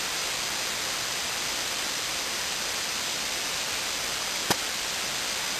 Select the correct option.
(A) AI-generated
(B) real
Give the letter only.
B